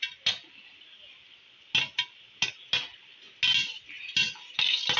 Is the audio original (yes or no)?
yes